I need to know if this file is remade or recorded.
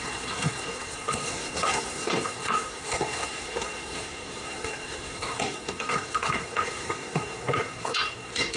remade